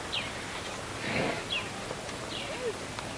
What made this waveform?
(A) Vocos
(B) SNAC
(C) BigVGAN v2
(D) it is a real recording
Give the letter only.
D